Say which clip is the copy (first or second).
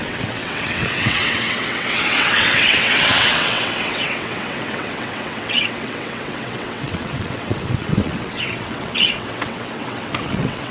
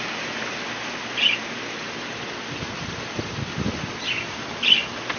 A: first